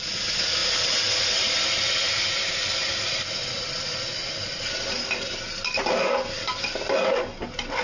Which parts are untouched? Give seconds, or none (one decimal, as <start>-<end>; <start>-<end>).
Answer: 0.0-7.8

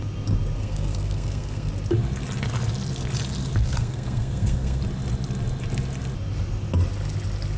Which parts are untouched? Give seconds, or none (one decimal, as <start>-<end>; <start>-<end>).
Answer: 0.0-0.6; 1.7-3.6; 4.8-7.6

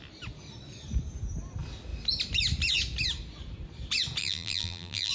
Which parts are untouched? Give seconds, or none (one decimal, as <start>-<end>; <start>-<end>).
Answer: 0.0-4.2

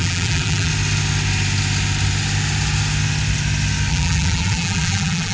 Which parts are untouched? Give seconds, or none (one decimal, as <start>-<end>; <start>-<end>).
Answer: 0.7-3.9